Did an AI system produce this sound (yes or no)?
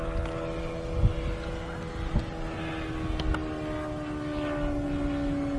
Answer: no